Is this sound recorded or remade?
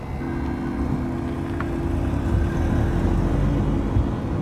recorded